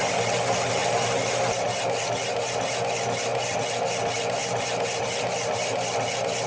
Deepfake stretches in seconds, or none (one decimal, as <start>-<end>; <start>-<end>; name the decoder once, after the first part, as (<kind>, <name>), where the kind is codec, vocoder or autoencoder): none